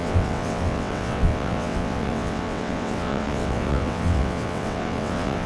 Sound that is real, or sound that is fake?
fake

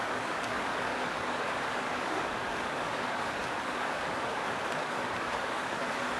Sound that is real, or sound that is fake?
fake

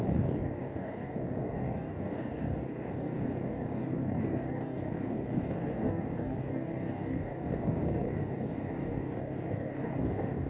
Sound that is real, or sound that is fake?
fake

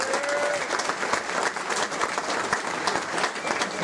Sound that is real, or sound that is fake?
real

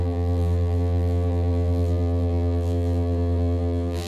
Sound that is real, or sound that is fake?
fake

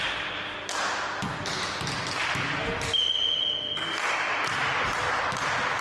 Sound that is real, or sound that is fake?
real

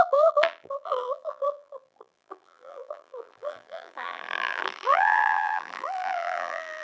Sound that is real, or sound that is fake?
fake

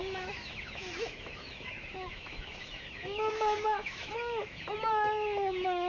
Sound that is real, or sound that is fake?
fake